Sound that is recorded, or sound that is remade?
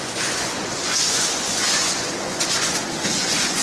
remade